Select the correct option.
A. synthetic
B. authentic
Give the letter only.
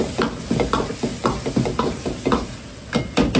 B